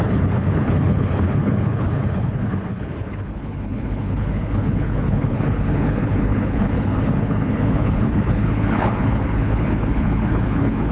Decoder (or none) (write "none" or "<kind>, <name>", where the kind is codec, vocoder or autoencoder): codec, HILCodec